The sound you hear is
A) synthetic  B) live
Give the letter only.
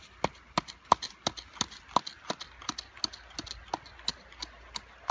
B